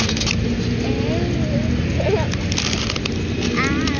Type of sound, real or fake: real